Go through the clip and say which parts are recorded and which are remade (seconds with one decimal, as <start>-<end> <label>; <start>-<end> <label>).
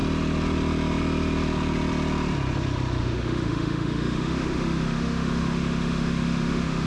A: 0.0-3.0 recorded; 3.0-6.9 remade